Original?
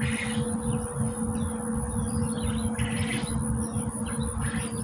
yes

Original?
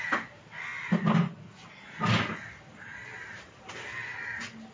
yes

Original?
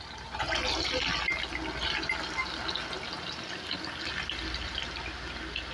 yes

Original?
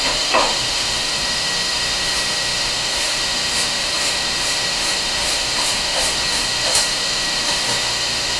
no